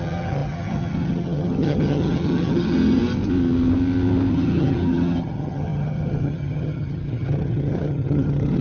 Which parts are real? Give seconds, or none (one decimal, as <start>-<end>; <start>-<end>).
3.0-4.3